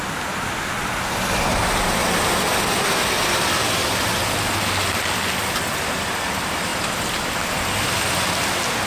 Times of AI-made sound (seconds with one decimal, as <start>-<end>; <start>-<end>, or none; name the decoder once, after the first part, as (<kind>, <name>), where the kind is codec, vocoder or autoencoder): none